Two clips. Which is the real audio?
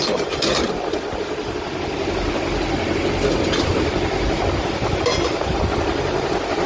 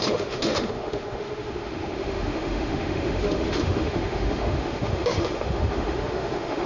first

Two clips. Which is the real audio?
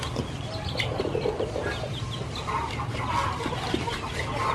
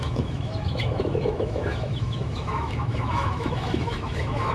first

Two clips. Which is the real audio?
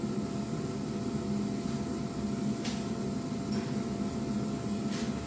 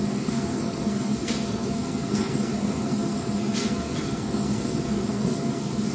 first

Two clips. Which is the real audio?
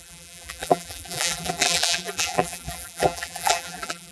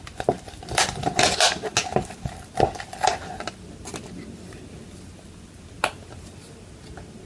second